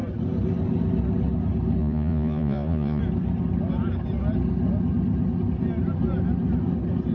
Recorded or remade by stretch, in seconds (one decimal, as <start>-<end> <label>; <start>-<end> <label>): 0.0-1.8 recorded; 1.8-3.0 remade; 3.0-7.1 recorded